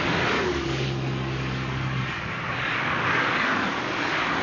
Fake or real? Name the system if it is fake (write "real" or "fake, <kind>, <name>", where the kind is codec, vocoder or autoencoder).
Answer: fake, codec, DAC